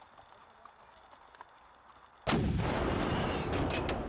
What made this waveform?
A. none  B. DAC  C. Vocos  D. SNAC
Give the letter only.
A